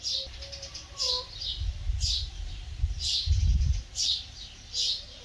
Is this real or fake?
real